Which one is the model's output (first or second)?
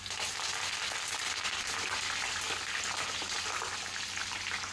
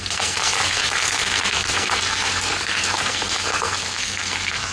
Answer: second